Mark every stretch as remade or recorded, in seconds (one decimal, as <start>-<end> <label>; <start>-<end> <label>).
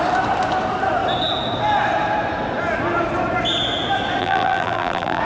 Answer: 0.0-4.2 recorded; 4.2-5.2 remade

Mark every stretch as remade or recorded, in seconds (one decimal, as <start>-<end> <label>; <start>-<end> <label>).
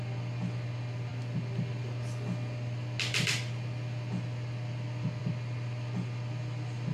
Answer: 0.0-6.9 recorded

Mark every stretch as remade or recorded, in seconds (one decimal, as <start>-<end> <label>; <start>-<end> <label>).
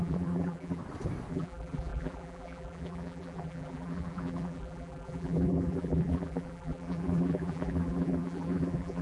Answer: 0.0-0.8 remade; 0.8-1.3 recorded; 1.3-9.0 remade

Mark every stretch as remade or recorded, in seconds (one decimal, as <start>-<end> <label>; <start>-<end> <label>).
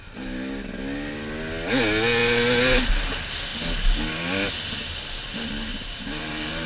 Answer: 0.0-5.7 recorded; 5.7-6.7 remade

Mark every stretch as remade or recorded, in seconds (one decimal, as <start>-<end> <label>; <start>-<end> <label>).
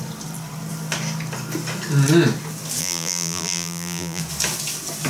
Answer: 0.0-2.8 recorded; 2.8-4.2 remade; 4.2-5.1 recorded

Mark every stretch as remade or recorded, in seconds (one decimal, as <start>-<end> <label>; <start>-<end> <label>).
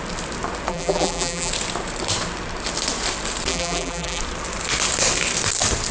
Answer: 0.0-0.7 recorded; 0.7-1.5 remade; 1.5-3.5 recorded; 3.5-4.2 remade; 4.2-5.9 recorded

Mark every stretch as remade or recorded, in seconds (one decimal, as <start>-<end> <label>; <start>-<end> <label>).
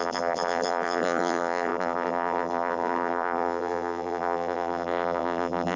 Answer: 0.0-5.8 remade